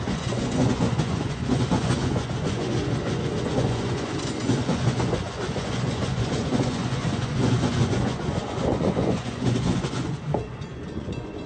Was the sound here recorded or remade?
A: remade